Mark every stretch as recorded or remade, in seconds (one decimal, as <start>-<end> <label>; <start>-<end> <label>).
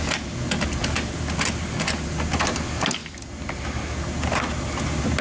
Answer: 0.0-5.2 recorded